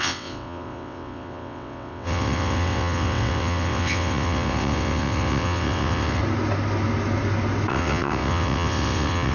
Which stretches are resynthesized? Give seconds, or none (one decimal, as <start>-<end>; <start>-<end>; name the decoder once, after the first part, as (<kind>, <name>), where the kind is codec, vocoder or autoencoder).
0.0-6.2 (vocoder, WaveNeXt); 7.7-9.3